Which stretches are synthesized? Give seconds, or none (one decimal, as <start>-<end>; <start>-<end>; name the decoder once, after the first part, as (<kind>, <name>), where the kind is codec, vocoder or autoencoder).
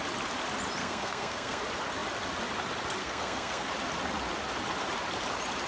0.8-1.6 (codec, SNAC); 3.0-3.7